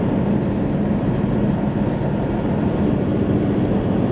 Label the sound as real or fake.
real